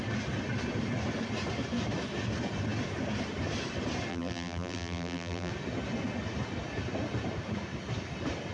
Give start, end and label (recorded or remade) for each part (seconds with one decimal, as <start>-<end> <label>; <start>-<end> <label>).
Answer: 0.0-4.1 recorded; 4.1-5.5 remade; 5.5-8.5 recorded